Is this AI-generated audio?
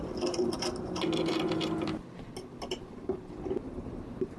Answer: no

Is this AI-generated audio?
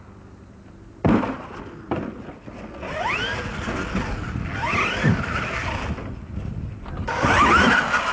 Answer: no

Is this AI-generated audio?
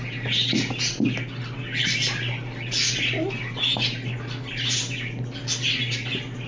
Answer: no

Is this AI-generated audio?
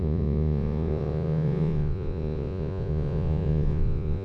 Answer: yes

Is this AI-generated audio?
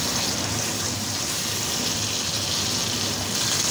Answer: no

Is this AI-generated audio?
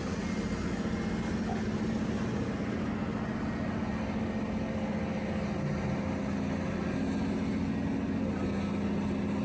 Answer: no